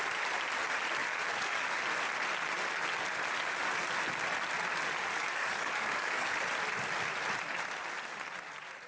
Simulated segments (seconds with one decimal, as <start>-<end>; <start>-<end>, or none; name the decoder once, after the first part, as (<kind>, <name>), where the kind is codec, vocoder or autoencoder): 1.0-1.8 (codec, DAC); 5.1-6.3